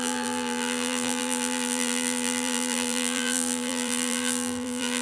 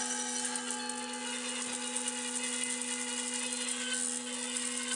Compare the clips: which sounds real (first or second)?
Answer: second